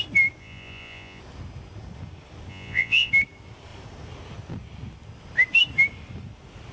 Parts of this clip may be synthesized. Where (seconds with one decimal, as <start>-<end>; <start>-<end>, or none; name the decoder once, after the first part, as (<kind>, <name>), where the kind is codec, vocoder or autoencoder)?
0.4-1.2 (vocoder, Vocos); 2.5-3.1